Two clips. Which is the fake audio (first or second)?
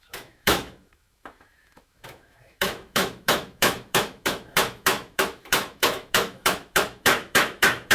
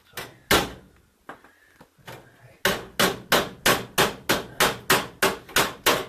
first